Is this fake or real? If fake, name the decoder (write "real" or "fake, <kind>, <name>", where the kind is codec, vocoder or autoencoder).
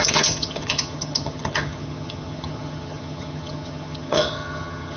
fake, vocoder, HiFi-GAN